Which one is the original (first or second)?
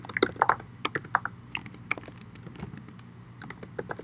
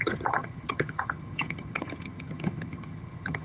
first